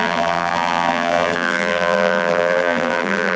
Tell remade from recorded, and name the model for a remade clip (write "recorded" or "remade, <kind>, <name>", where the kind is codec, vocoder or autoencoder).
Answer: remade, vocoder, BigVGAN v2